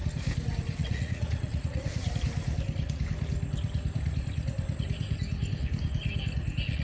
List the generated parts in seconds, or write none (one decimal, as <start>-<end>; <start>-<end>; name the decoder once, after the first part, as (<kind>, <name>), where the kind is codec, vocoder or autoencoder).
0.8-2.1 (vocoder, Vocos)